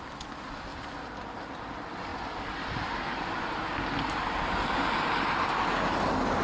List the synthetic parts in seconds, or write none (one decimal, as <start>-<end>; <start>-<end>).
none